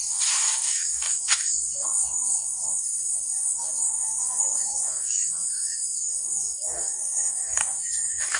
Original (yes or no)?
no